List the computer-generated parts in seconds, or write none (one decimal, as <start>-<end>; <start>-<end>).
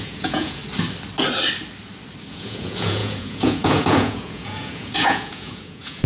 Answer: 0.0-0.6; 2.3-6.1